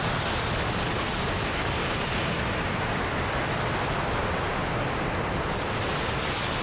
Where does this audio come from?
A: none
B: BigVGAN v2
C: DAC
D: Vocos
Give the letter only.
A